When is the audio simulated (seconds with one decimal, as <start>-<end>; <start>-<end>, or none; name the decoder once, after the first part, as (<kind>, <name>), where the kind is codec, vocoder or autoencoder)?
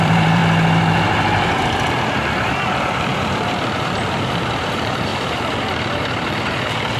0.0-0.4 (vocoder, BigVGAN v2); 4.2-5.1; 6.1-7.0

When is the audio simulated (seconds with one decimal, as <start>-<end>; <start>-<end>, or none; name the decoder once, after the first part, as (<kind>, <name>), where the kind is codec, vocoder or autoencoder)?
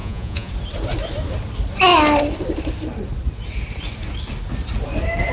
0.0-0.5 (vocoder, Vocos)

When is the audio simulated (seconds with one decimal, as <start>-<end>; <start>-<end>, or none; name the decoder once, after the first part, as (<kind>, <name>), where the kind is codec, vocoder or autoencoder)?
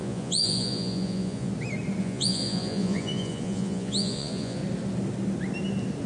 0.0-1.5 (vocoder, Vocos); 2.0-4.6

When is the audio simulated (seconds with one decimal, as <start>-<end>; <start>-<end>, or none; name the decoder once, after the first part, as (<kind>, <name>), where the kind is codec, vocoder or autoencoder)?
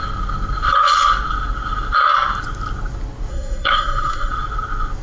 3.3-4.3 (codec, SNAC)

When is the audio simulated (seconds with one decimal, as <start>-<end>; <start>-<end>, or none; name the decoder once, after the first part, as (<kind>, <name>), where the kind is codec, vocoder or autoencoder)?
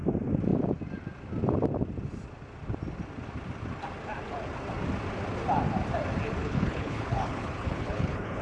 6.4-8.4 (codec, HILCodec)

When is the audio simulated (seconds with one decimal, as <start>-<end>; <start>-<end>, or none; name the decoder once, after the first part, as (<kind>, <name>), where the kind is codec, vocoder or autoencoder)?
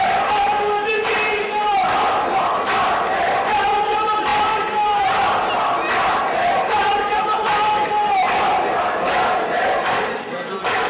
none